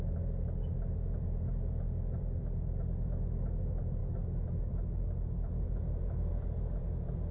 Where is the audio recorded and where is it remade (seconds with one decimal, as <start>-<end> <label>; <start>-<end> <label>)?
0.0-7.3 recorded